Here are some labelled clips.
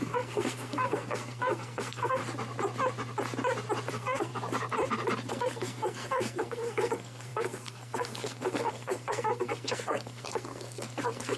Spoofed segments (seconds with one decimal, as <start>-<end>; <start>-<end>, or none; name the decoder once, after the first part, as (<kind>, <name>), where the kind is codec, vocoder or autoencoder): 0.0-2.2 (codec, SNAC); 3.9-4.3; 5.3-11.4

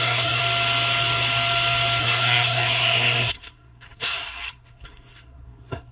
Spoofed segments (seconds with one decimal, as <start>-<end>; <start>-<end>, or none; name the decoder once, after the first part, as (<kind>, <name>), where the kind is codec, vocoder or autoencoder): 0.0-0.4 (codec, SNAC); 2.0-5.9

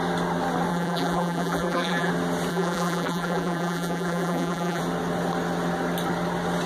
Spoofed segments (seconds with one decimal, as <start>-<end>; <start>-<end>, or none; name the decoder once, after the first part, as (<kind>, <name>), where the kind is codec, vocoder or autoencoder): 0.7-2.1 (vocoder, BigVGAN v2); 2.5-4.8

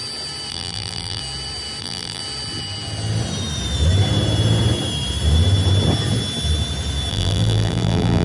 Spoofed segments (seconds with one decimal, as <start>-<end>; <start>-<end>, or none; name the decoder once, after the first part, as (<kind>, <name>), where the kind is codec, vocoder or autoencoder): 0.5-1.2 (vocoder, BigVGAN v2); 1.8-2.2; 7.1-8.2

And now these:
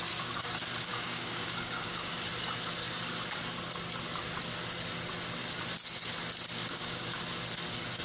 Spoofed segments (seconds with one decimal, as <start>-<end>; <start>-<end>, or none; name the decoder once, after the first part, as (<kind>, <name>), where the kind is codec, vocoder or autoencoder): 0.9-2.1 (codec, DAC); 6.6-7.2

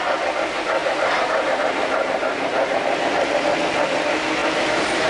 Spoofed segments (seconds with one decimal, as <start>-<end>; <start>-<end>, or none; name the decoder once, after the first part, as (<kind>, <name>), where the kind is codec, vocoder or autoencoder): 0.8-3.0 (vocoder, BigVGAN v2)